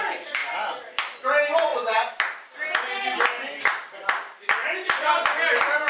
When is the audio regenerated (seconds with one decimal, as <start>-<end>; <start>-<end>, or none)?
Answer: none